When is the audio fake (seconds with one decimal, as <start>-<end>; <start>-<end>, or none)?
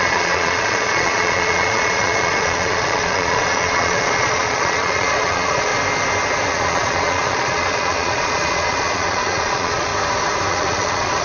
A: 0.0-5.7; 6.5-9.9; 10.5-11.2